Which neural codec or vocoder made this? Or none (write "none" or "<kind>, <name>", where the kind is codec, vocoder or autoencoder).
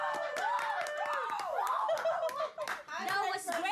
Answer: none